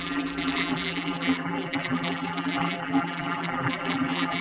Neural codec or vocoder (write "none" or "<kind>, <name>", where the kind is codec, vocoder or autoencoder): vocoder, BigVGAN v2